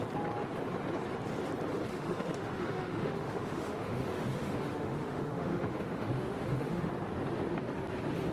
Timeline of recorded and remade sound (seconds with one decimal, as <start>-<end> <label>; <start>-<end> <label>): 0.0-1.9 recorded; 1.9-6.9 remade; 6.9-8.3 recorded